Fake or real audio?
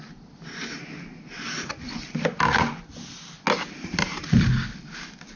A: real